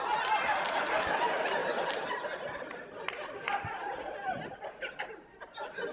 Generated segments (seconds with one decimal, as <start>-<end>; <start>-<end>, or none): none